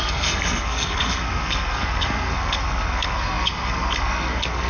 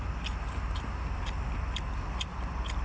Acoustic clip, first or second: second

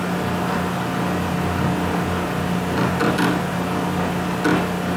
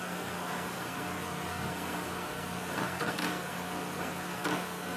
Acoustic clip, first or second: first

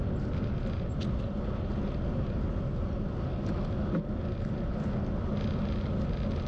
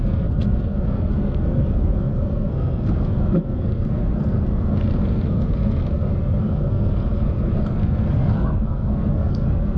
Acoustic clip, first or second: first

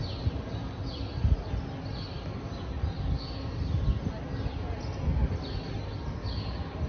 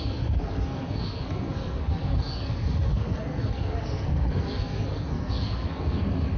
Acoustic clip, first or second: first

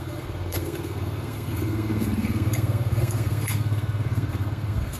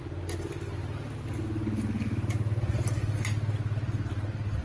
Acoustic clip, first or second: second